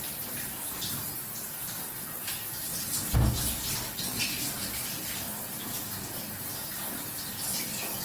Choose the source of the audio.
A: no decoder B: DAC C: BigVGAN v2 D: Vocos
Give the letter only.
A